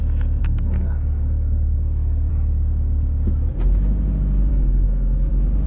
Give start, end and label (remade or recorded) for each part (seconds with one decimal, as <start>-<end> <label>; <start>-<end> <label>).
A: 0.0-0.4 recorded; 0.4-2.3 remade; 2.3-4.5 recorded; 4.5-5.3 remade; 5.3-5.7 recorded